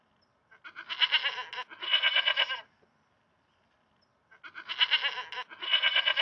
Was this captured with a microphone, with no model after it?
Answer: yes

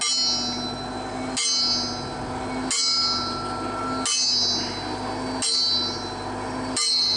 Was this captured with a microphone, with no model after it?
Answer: yes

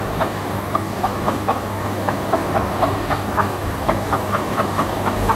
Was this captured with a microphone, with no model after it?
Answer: no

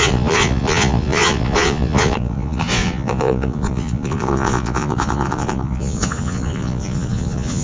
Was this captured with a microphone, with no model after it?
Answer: no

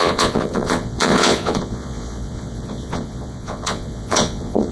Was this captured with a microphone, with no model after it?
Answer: no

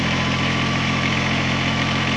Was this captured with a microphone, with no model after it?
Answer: no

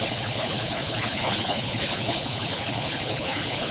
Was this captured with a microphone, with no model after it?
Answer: no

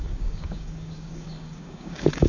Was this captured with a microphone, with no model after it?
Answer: no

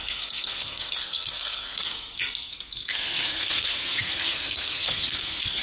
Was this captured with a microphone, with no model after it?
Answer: no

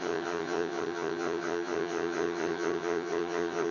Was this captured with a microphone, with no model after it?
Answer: no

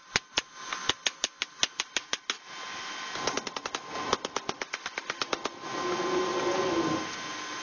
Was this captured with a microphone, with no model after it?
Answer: yes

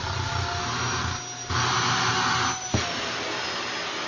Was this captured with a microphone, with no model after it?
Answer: yes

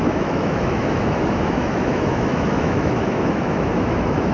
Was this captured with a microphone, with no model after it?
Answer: no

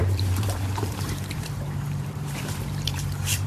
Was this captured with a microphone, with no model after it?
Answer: no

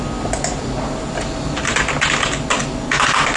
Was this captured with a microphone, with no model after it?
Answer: yes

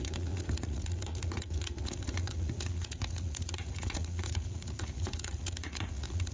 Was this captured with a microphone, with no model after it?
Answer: no